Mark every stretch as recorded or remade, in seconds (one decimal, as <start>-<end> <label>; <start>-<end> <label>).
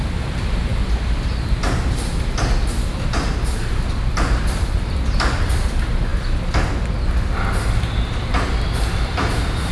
0.0-0.7 remade; 0.7-4.4 recorded; 4.4-6.1 remade; 6.1-8.9 recorded; 8.9-9.7 remade